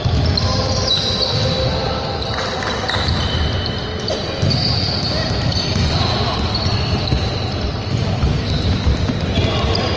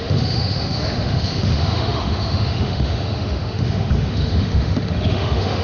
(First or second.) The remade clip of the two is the second